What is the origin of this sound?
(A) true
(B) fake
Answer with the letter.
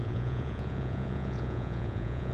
B